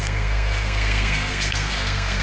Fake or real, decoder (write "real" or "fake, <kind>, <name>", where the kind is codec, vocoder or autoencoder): fake, codec, SNAC